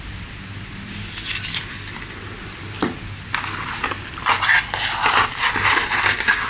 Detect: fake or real real